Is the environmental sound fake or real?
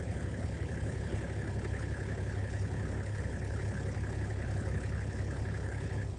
fake